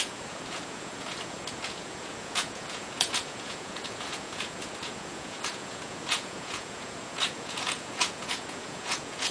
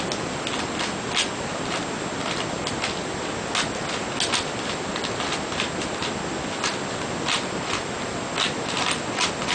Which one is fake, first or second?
first